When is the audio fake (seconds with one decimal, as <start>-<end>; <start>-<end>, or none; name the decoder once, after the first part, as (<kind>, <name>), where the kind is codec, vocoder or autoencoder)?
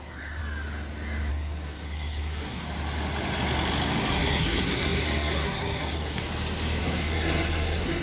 0.0-0.4 (codec, SNAC); 1.3-2.6; 4.1-6.2; 6.8-8.0